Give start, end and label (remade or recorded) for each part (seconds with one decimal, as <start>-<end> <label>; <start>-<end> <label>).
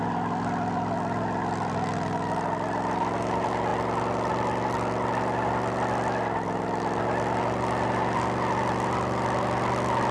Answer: 0.0-10.1 recorded